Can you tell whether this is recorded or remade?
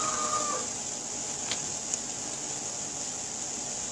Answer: recorded